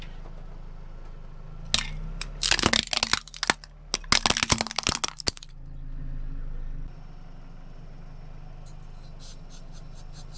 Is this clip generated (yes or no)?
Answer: no